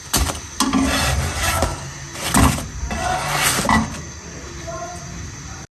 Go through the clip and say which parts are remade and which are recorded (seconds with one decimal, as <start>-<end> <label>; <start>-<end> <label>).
0.0-5.7 recorded